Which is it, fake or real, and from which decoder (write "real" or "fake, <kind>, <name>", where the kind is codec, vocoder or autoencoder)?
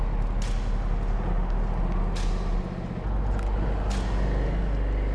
real